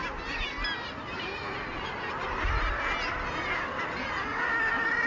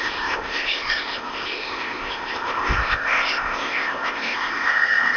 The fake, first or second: second